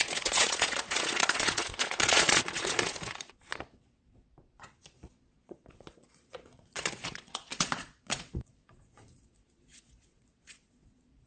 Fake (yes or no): yes